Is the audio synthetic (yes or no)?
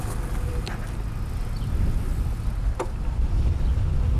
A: no